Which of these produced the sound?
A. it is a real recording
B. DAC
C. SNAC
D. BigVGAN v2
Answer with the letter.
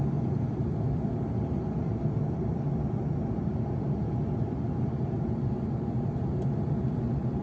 A